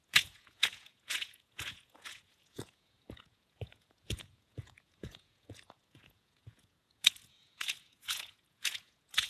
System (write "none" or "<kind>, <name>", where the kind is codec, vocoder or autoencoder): vocoder, Vocos